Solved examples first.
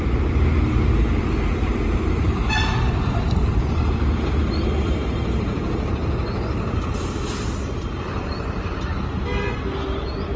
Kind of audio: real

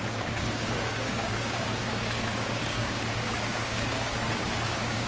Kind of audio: fake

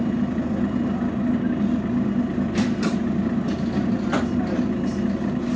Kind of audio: real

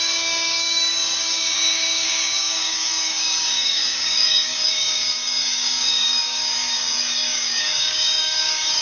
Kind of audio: fake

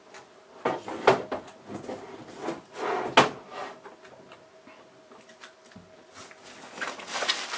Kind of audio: real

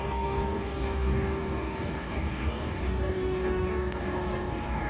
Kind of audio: fake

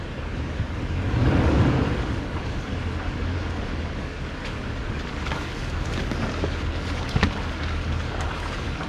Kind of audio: fake